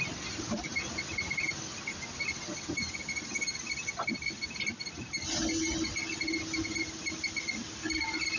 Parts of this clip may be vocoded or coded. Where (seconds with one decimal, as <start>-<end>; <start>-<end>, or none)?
none